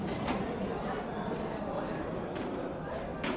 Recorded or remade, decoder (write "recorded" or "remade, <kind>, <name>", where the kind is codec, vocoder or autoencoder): recorded